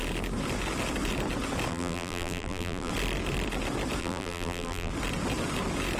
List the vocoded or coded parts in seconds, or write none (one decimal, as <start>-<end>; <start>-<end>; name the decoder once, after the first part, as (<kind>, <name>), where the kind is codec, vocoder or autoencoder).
1.7-2.9 (vocoder, BigVGAN v2); 4.0-4.9